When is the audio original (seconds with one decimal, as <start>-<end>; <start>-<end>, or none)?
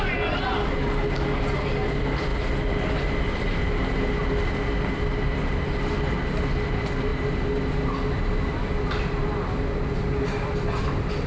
0.0-11.3